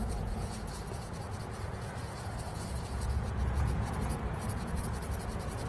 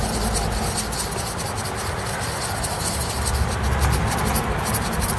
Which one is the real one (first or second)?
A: second